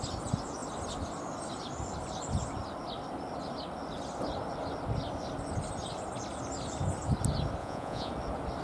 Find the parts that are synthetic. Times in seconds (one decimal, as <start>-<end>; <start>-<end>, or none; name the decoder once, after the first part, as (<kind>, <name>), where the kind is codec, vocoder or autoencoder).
7.6-8.1 (vocoder, Vocos)